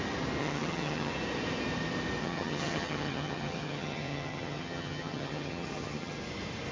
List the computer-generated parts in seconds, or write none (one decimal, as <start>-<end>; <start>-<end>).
0.4-1.1; 2.2-6.2